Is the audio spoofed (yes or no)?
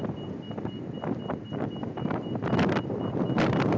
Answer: no